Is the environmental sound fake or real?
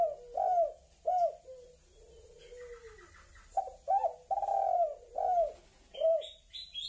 real